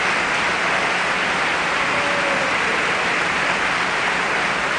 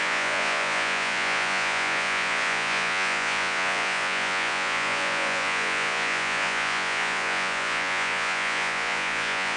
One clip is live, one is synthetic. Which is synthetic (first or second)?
second